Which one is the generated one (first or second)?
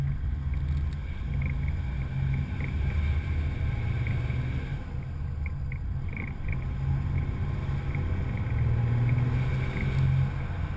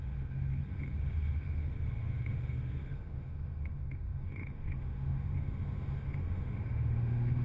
second